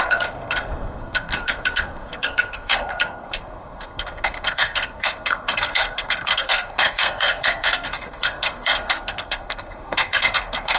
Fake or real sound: fake